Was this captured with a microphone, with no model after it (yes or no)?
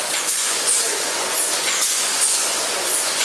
no